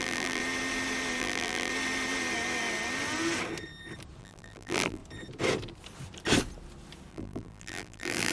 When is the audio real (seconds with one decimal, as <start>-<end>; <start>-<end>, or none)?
0.4-1.2; 1.7-4.2; 5.0-7.1